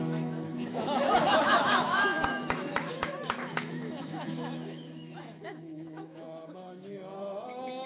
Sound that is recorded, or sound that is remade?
remade